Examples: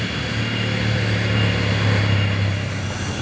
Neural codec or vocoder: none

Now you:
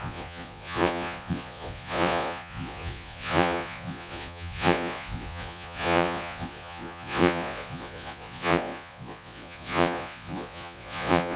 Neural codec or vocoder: vocoder, Vocos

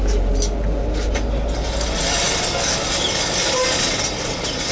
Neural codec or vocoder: none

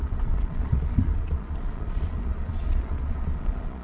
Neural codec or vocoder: vocoder, Vocos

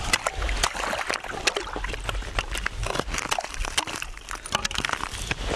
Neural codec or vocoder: none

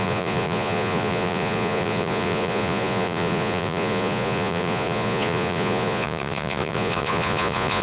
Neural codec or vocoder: vocoder, Vocos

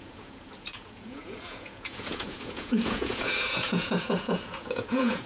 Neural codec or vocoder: vocoder, Vocos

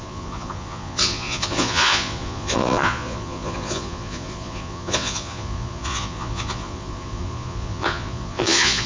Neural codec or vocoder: vocoder, Vocos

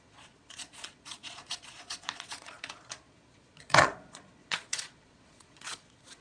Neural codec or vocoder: vocoder, Vocos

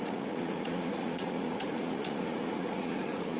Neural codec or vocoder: vocoder, Vocos